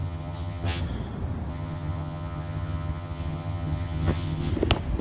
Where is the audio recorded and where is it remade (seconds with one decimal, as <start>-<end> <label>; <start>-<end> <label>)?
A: 0.0-0.8 remade; 0.8-1.5 recorded; 1.5-4.5 remade; 4.5-5.0 recorded